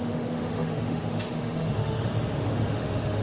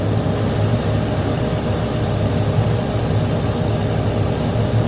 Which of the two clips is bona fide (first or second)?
second